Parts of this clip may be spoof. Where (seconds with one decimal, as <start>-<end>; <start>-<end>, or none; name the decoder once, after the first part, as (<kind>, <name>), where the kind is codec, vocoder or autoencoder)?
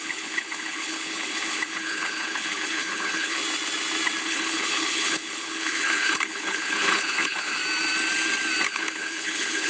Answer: 0.0-3.4 (codec, HILCodec); 4.2-7.6; 8.7-9.7